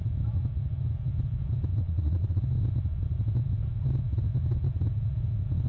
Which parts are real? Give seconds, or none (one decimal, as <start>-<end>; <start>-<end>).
0.0-1.8; 2.4-5.7

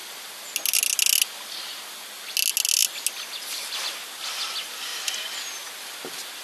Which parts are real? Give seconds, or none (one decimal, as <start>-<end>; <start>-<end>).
0.0-6.4

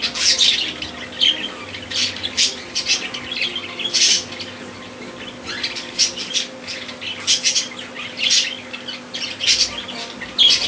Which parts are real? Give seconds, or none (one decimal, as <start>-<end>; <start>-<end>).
0.0-10.7